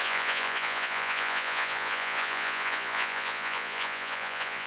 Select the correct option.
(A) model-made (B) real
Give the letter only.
A